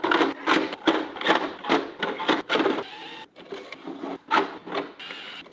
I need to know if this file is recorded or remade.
recorded